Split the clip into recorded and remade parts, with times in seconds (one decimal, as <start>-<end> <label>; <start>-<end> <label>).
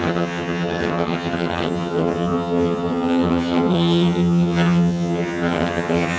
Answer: 0.0-6.2 remade